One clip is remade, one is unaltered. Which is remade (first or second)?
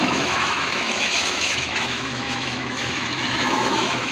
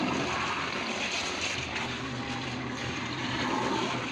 first